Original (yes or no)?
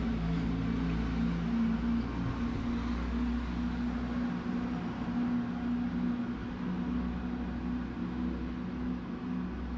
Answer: yes